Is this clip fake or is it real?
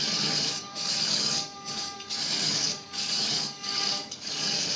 fake